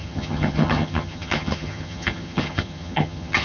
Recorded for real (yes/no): no